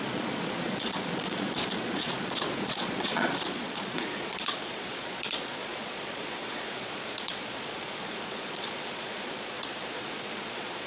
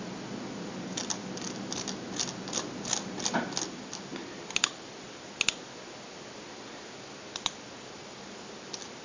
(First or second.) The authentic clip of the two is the second